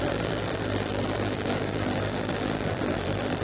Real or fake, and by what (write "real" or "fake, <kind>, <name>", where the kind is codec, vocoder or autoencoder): fake, vocoder, BigVGAN v2